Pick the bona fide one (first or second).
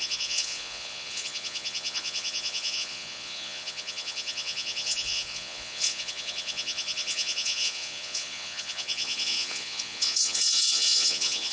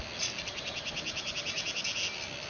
second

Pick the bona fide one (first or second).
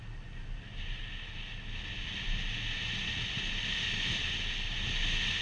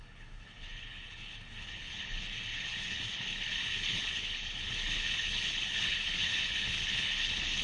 first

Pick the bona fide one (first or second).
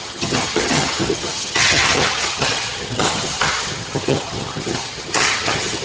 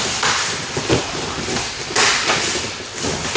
second